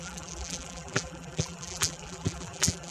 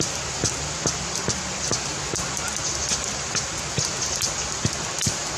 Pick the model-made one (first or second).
first